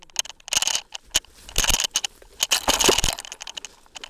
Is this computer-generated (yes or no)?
no